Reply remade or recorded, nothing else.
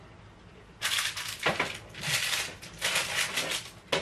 recorded